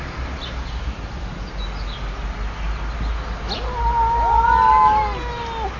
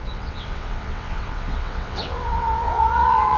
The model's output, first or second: second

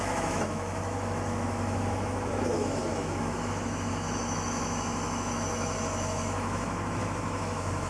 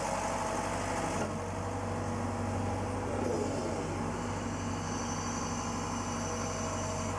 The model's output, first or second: first